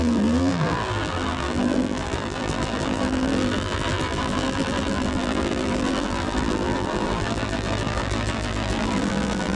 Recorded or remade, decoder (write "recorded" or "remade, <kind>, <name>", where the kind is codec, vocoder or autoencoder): remade, vocoder, BigVGAN v2